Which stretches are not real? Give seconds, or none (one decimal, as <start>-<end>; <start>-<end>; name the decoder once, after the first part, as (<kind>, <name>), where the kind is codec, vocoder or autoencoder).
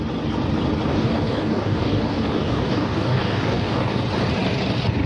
0.9-4.0 (codec, DAC)